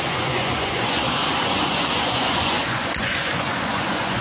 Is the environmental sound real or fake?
fake